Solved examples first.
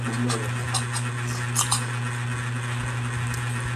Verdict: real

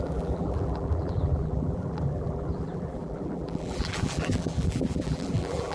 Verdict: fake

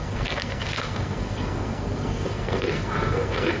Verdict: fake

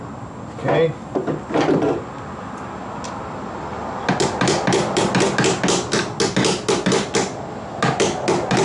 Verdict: real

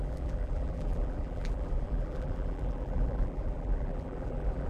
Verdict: fake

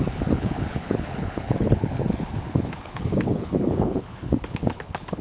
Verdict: fake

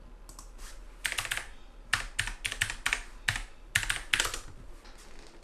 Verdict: real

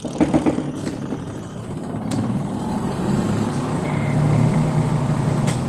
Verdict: fake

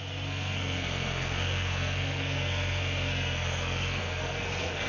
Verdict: fake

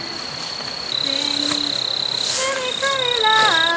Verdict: real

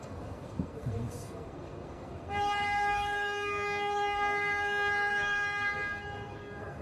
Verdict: fake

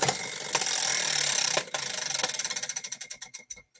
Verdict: real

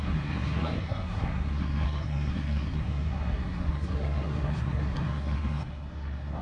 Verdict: fake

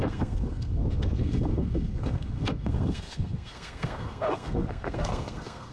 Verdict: fake